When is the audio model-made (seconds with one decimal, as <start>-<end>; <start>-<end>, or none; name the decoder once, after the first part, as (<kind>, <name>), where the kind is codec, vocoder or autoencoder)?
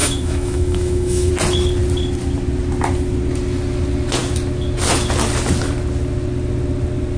0.0-1.3 (autoencoder, DAC-VAE)